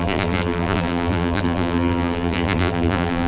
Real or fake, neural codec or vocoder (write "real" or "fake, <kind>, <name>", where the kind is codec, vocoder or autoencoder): fake, vocoder, BigVGAN v2